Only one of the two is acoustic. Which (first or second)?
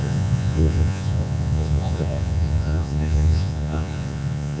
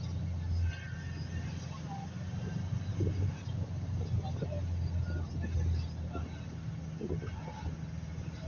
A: second